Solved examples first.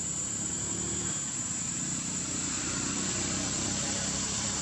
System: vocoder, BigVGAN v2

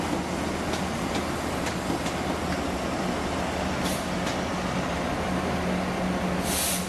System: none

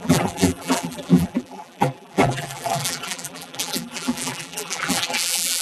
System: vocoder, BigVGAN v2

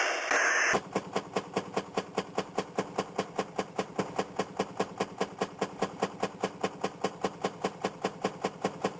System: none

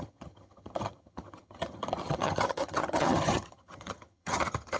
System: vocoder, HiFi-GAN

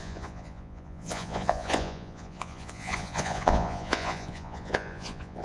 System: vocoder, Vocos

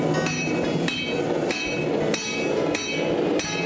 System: none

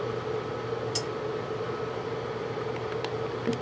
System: none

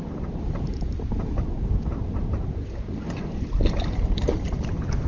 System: vocoder, BigVGAN v2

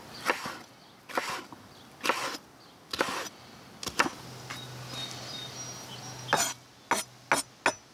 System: none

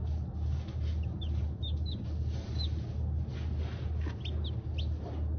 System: none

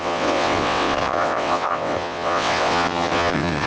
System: vocoder, WaveNeXt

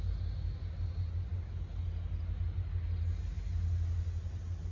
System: none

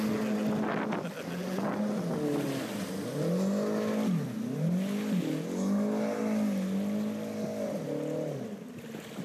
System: none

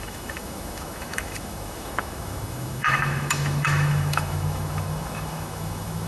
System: autoencoder, DAC-VAE